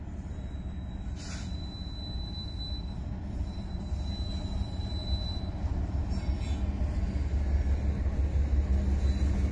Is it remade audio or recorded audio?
recorded